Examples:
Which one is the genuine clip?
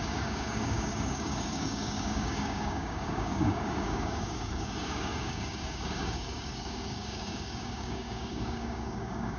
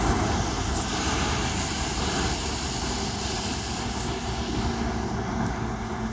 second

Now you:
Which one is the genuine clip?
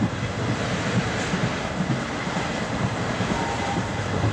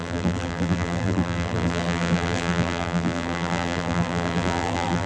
first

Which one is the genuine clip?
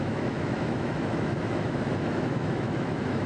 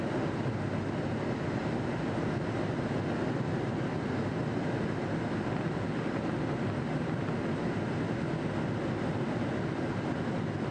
second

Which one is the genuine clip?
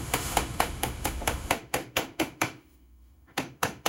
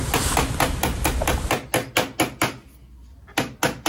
second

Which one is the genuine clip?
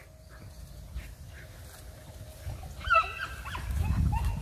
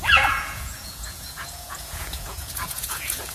first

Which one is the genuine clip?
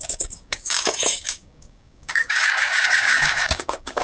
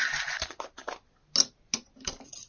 second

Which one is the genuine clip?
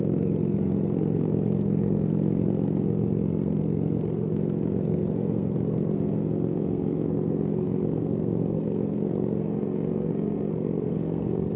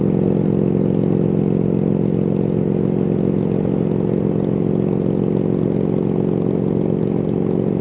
second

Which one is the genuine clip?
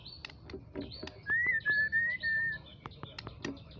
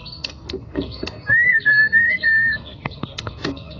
first